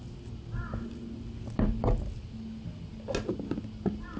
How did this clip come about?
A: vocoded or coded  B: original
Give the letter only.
B